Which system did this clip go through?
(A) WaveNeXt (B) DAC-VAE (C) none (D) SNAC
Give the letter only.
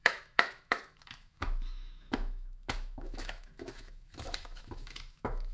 B